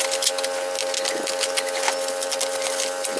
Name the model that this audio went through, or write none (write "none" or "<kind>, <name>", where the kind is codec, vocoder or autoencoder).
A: none